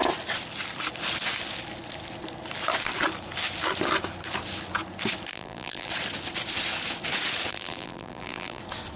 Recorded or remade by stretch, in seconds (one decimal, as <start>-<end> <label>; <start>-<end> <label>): 0.0-5.3 recorded; 5.3-5.9 remade; 5.9-7.5 recorded; 7.5-8.6 remade; 8.6-9.0 recorded